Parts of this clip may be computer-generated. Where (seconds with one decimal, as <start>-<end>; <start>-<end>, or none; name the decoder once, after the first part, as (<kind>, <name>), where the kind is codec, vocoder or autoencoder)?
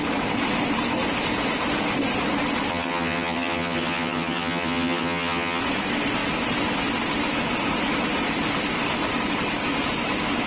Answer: 2.7-5.6 (vocoder, HiFi-GAN)